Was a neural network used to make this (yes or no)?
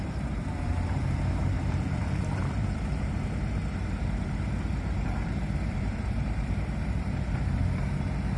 yes